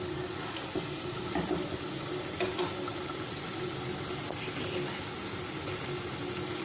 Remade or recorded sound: recorded